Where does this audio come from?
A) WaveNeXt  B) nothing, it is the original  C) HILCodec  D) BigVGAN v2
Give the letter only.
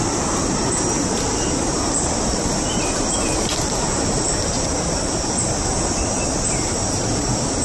B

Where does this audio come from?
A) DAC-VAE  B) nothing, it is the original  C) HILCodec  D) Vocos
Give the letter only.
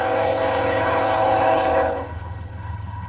C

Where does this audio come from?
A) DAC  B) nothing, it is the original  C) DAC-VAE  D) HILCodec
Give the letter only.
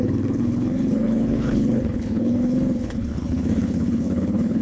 D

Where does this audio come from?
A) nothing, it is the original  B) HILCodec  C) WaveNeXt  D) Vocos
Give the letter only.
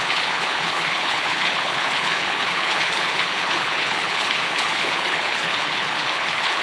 B